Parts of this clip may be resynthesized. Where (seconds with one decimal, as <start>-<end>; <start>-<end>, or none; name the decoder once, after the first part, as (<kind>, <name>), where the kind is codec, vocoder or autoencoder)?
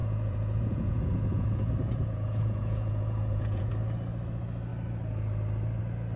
0.0-3.7 (vocoder, Vocos)